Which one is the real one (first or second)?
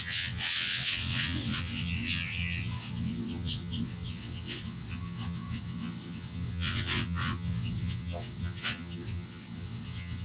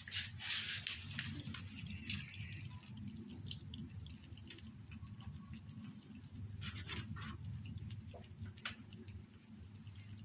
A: second